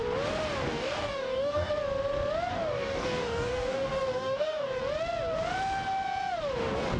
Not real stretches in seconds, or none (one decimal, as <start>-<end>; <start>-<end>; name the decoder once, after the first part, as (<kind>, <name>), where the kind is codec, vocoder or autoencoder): 0.7-1.7 (codec, DAC); 2.5-4.8